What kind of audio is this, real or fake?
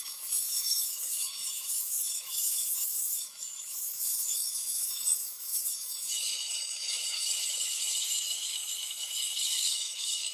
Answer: fake